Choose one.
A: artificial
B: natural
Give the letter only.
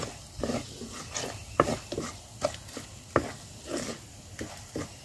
B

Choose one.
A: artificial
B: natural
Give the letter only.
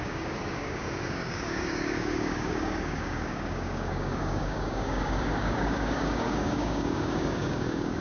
A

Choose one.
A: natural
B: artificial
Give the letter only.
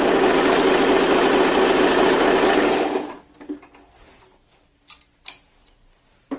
A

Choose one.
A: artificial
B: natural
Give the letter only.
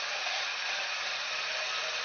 B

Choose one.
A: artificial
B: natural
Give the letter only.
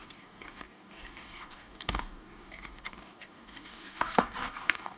A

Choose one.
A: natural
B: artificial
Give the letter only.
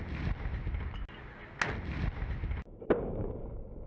A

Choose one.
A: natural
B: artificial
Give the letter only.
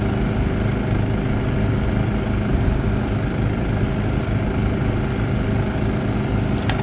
A